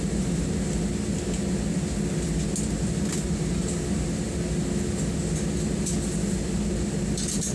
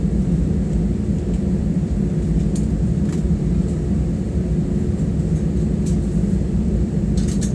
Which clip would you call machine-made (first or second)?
second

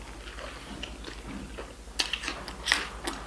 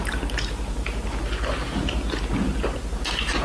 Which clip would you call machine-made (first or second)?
second